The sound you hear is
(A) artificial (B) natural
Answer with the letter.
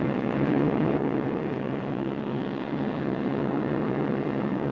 A